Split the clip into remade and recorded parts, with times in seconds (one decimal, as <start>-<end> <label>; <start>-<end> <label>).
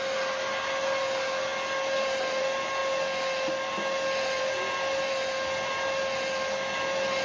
0.0-7.2 recorded